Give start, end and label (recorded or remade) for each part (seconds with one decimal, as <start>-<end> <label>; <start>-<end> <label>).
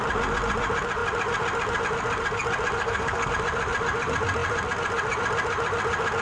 0.0-2.8 recorded; 2.8-3.3 remade; 3.3-6.2 recorded